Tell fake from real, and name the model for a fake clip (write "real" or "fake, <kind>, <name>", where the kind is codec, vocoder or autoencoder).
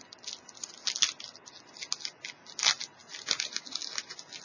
real